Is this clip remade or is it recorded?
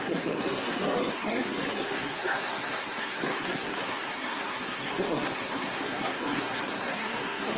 remade